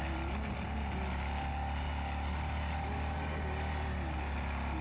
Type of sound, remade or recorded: recorded